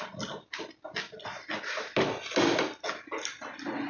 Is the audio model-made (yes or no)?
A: no